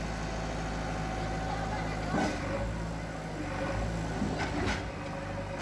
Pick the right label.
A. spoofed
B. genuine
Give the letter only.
B